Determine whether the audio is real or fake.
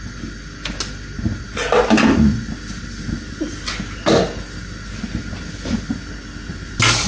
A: real